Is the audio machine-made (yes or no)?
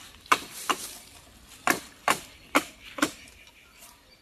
yes